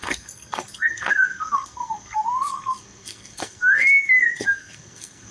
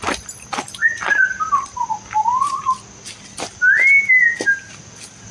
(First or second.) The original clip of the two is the second